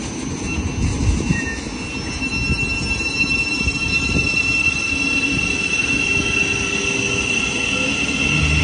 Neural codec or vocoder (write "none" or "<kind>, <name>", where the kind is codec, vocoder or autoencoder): none